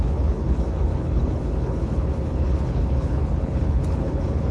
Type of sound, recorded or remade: remade